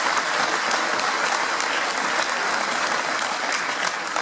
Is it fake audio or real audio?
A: real